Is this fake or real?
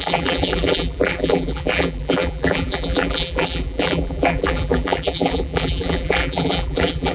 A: fake